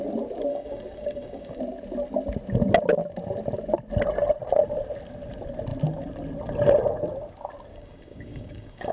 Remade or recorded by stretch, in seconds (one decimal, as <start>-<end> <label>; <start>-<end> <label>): 0.0-0.5 recorded; 0.5-1.6 remade; 1.6-7.7 recorded; 7.7-8.9 remade